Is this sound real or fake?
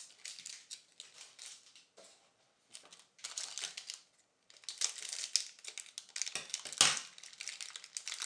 real